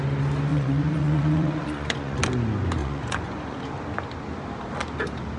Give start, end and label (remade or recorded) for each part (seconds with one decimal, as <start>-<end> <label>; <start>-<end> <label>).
0.0-0.5 recorded; 0.5-2.2 remade; 2.2-2.8 recorded; 2.8-3.6 remade; 3.6-5.4 recorded